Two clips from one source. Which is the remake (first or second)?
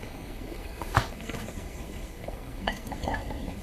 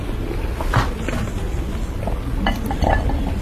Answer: first